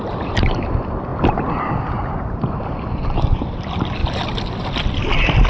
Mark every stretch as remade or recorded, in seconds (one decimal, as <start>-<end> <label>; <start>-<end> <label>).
0.0-5.5 recorded